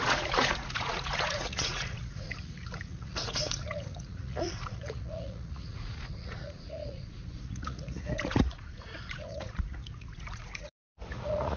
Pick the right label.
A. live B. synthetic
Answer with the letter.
B